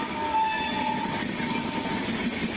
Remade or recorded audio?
recorded